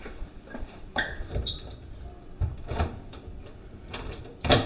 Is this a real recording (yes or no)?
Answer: no